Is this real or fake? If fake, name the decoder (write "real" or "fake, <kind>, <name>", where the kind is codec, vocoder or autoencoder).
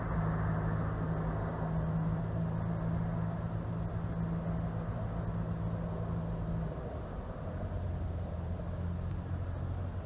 real